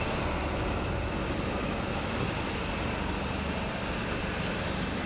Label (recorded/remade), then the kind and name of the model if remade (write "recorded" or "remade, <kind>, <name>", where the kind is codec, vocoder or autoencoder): recorded